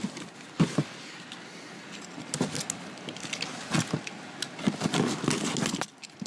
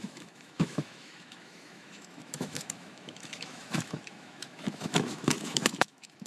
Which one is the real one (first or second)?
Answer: first